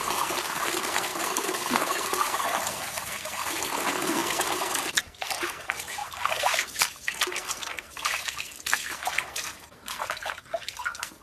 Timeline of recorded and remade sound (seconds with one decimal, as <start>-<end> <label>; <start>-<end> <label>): 0.0-11.2 remade